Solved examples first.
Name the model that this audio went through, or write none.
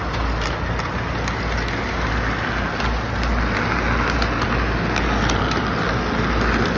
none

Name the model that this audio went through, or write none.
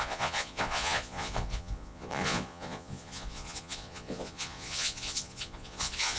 vocoder, Vocos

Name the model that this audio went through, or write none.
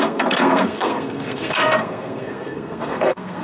codec, SNAC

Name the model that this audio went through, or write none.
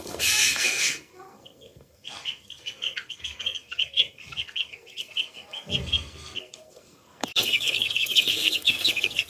codec, SNAC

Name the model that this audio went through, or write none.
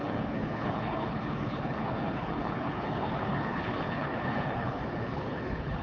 codec, HILCodec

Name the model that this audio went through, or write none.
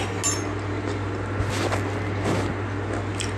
none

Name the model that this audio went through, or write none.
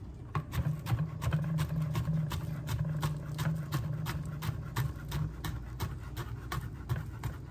none